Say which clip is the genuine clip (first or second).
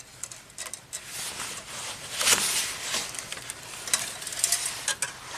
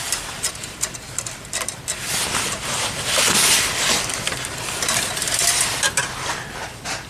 first